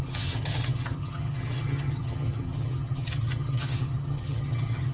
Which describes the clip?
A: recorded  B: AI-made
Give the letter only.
B